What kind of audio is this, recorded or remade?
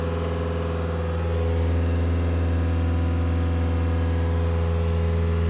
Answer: recorded